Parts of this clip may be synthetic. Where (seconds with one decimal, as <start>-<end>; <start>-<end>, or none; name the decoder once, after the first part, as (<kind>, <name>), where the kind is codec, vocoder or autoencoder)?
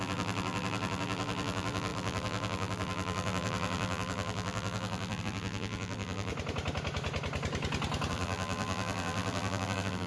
0.0-6.3 (vocoder, BigVGAN v2); 8.1-10.1